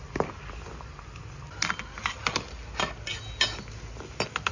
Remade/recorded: recorded